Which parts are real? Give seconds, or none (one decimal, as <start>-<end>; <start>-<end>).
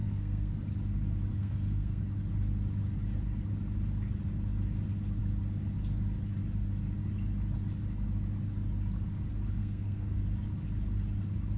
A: 0.5-1.3; 2.0-9.6; 10.2-11.6